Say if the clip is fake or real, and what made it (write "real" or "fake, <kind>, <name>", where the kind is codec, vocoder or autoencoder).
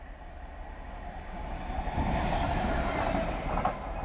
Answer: real